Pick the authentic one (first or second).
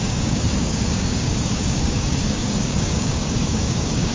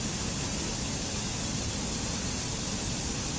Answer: second